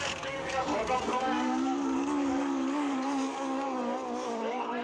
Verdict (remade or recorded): remade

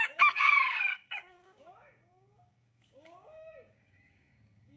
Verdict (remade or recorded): remade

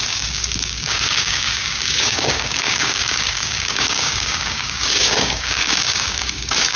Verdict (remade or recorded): remade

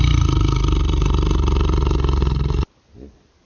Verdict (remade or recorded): recorded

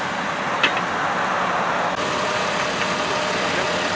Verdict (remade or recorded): recorded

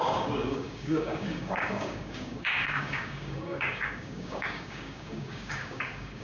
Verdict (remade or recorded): remade